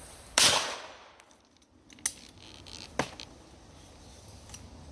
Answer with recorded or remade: recorded